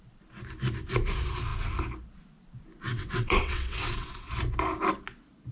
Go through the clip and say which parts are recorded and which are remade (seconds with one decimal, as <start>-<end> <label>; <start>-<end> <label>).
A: 0.0-2.9 recorded; 2.9-4.3 remade; 4.3-5.5 recorded